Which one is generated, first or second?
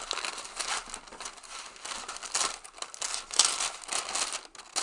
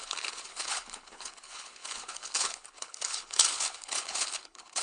second